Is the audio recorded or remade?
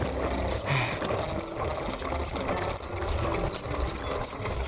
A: recorded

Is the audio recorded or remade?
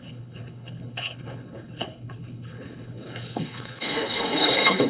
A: remade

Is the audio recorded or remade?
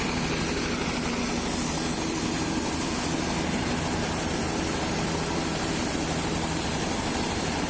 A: recorded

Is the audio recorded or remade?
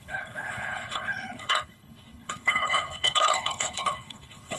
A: remade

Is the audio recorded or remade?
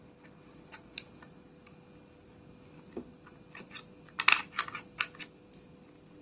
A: recorded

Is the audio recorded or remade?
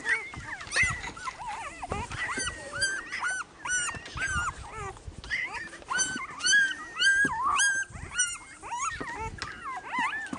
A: recorded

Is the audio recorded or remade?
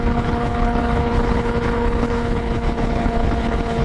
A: remade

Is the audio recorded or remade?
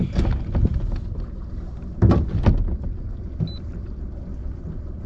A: recorded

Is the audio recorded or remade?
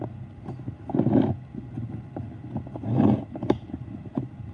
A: recorded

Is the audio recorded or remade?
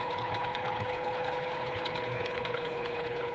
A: remade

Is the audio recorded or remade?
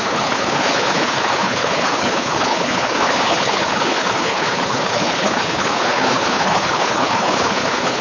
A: remade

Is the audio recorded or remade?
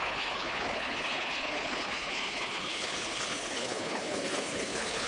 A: remade